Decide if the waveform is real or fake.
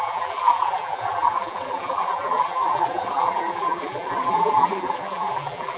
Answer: fake